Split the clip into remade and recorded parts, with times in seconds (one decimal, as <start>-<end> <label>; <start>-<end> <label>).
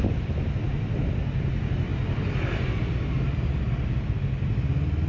0.0-5.1 recorded